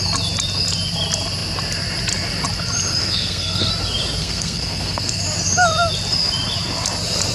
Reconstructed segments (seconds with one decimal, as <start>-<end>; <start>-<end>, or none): 3.0-3.7; 4.2-5.2